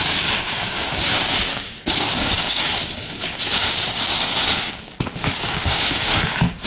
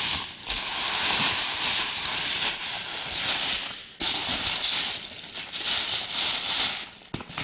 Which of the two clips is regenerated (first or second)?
first